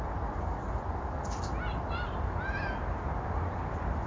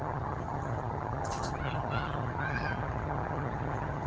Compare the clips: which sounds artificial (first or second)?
second